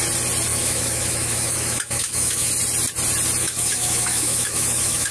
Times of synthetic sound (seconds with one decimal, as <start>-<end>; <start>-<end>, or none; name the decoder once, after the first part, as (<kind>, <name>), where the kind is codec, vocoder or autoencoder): 0.5-2.5 (autoencoder, DAC-VAE); 3.4-5.1